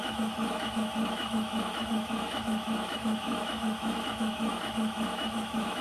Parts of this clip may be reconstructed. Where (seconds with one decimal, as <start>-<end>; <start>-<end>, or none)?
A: 0.0-5.8